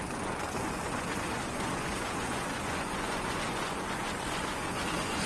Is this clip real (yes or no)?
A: no